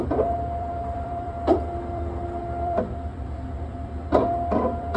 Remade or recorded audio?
remade